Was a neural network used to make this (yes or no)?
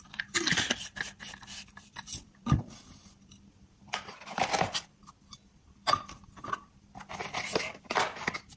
yes